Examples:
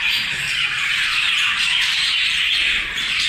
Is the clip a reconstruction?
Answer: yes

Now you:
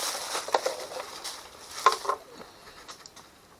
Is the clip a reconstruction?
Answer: no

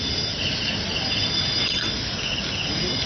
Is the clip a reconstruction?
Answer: no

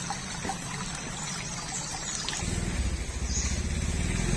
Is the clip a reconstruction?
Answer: no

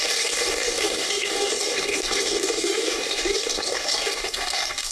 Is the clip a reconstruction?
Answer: yes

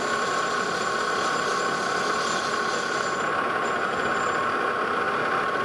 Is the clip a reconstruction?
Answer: no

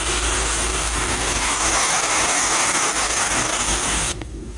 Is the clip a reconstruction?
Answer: yes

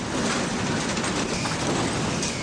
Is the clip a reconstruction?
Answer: no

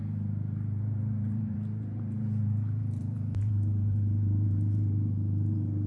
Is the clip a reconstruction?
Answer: yes